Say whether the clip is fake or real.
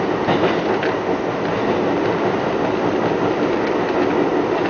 real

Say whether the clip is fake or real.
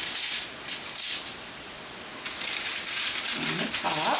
real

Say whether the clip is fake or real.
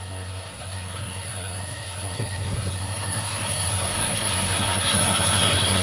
fake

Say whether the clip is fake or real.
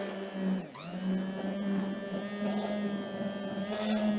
real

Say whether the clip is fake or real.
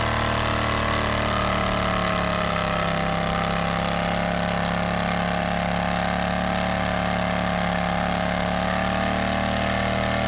real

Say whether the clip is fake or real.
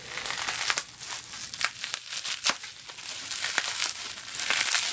real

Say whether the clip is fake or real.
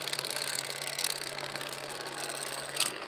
fake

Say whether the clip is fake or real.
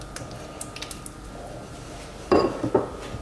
real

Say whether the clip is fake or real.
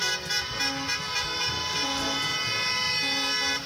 real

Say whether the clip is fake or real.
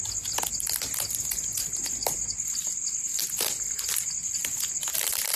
real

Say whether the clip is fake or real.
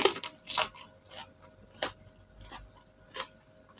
real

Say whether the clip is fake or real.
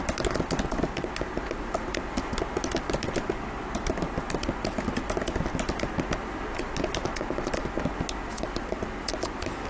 real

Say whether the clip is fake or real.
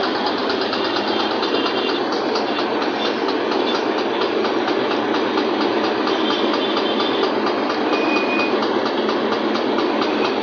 real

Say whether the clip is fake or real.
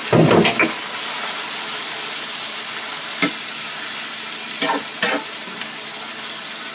real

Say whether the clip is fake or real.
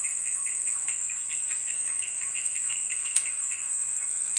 fake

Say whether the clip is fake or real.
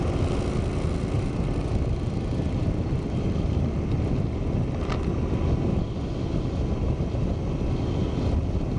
real